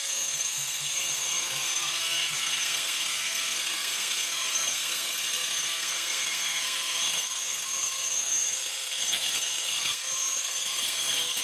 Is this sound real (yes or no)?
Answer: no